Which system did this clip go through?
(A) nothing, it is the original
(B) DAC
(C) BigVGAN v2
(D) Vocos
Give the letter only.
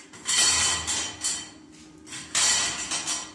A